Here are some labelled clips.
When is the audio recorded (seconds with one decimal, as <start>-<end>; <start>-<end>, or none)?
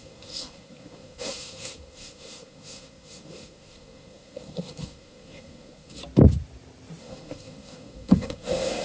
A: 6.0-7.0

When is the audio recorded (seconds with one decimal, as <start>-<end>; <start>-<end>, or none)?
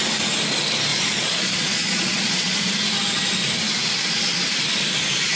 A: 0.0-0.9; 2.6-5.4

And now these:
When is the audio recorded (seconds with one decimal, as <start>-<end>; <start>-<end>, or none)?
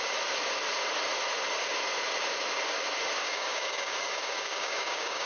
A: 0.0-3.2